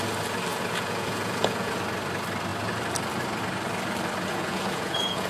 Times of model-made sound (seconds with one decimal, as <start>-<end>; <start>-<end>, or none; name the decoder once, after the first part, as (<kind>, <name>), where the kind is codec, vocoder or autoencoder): 0.5-1.7 (vocoder, Vocos); 4.3-5.3